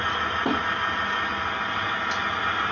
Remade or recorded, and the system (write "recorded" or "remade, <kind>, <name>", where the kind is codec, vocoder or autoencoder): recorded